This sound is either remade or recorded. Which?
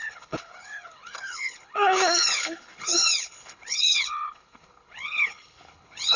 remade